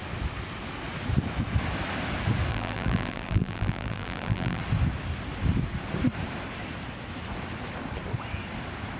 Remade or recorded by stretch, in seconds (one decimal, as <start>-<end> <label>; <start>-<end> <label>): 0.0-2.5 recorded; 2.5-4.6 remade; 4.6-9.0 recorded